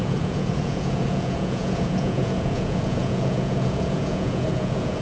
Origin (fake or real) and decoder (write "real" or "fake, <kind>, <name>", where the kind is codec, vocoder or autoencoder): fake, vocoder, Vocos